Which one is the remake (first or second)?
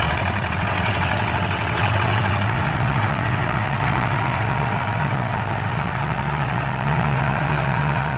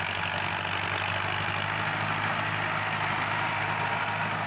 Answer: first